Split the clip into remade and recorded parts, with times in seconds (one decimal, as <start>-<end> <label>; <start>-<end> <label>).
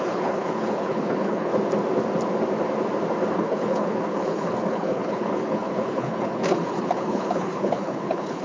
0.0-1.5 remade; 1.5-3.3 recorded; 3.3-8.4 remade